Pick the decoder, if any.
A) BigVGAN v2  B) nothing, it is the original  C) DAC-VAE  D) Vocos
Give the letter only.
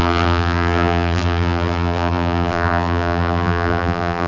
A